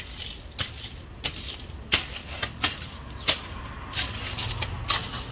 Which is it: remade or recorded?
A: recorded